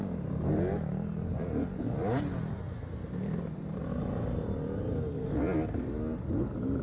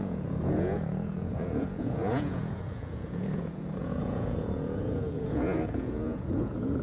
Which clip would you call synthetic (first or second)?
second